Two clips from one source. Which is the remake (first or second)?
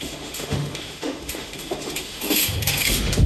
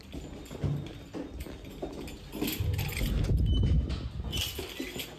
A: first